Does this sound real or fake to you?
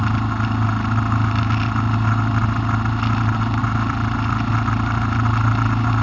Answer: real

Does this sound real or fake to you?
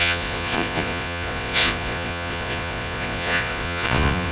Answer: fake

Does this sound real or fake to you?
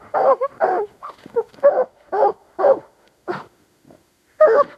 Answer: fake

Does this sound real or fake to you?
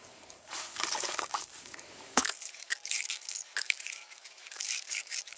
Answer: fake